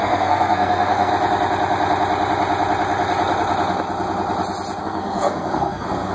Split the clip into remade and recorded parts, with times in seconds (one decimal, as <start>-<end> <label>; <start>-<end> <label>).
0.0-1.1 remade; 1.1-4.8 recorded; 4.8-6.1 remade